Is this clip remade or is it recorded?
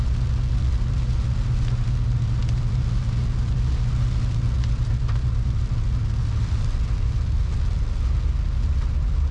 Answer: recorded